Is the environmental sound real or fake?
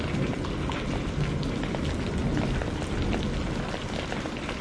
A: real